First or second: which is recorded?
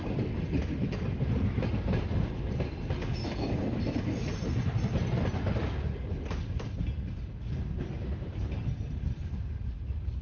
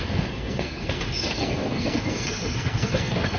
first